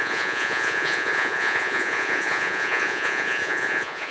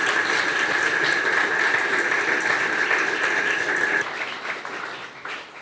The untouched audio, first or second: second